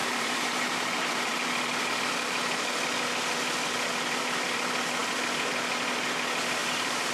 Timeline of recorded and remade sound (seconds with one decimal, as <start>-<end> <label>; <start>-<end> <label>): 0.0-1.3 remade; 1.3-6.6 recorded; 6.6-7.1 remade